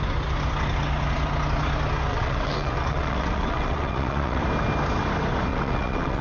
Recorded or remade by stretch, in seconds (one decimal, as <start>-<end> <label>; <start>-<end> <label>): 0.0-2.1 recorded; 2.1-4.4 remade; 4.4-5.5 recorded; 5.5-6.2 remade